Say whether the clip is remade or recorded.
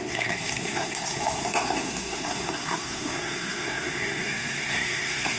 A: remade